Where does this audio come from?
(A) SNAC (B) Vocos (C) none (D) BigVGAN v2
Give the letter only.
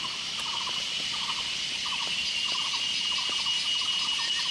C